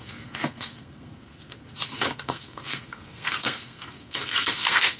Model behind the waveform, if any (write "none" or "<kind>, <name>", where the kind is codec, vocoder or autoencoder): codec, SNAC